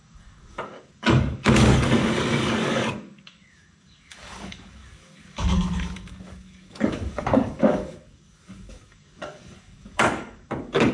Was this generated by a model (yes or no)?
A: yes